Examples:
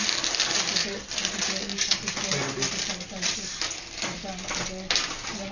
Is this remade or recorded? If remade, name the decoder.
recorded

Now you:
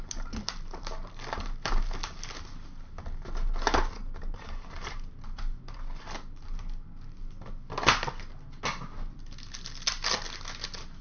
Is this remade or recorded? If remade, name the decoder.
recorded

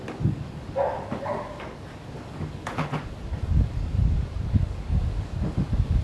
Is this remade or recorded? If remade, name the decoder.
remade, codec, DAC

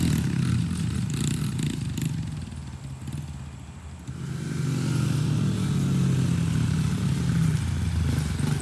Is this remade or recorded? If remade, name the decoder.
recorded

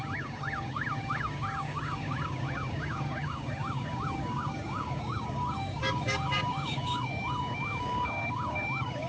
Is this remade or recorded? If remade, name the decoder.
remade, codec, DAC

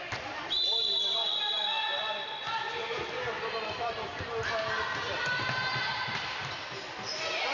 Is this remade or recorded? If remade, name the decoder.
recorded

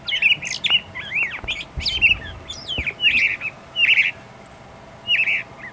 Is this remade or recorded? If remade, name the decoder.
recorded